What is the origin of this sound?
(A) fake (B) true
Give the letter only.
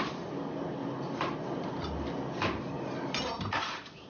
B